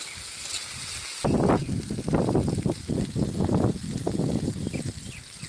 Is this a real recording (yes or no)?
yes